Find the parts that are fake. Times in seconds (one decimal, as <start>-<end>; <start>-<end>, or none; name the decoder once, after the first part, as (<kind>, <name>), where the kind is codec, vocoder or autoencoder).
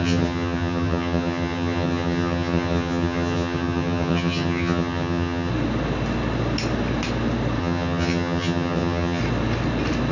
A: 0.0-5.5 (vocoder, HiFi-GAN); 7.6-9.2